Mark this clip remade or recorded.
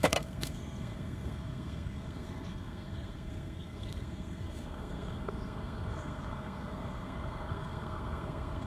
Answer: remade